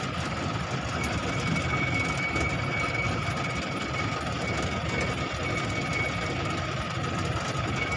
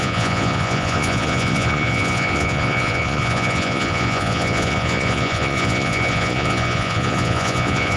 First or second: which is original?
first